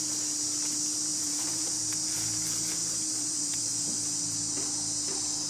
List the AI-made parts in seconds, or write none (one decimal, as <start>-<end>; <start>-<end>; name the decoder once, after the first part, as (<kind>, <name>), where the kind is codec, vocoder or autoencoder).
1.1-1.7 (vocoder, BigVGAN v2); 2.8-4.0